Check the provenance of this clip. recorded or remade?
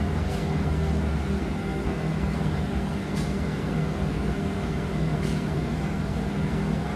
remade